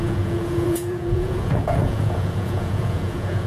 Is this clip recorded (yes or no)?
no